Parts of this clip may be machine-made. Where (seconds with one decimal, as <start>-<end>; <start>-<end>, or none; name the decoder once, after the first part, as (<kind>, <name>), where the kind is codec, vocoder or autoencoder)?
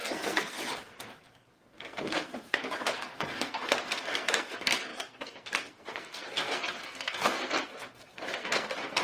0.0-9.0 (codec, SNAC)